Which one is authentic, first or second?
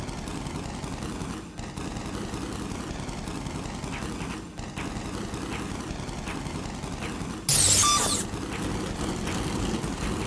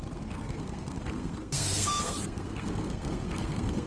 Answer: first